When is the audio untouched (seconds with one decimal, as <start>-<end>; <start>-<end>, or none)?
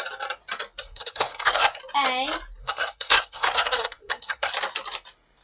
0.0-0.8; 1.8-2.6; 4.5-5.4